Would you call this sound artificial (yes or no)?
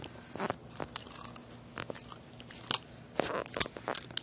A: no